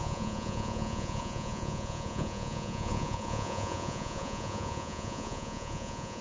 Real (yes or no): no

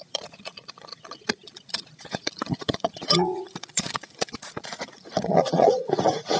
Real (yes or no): no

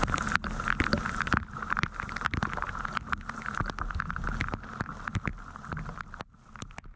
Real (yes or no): yes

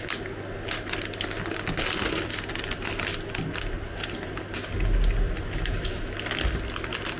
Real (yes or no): yes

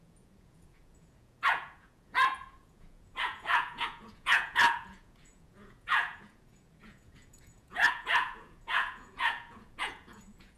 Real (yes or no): no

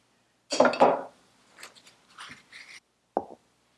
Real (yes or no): yes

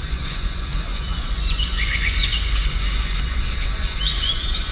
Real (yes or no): no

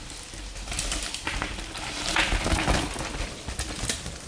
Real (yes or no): yes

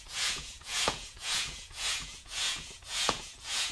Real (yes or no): no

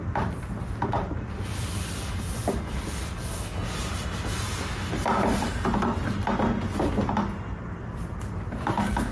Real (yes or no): yes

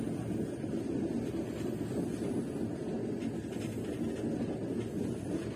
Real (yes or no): yes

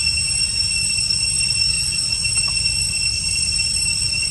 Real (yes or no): yes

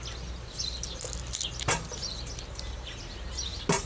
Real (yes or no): yes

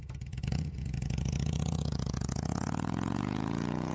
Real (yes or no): no